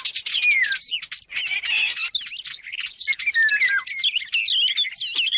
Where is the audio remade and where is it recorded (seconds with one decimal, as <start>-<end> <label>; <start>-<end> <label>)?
0.0-5.4 recorded